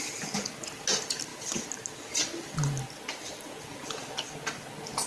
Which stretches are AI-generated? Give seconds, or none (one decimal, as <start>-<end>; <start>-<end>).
none